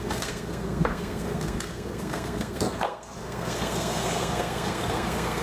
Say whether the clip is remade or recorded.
remade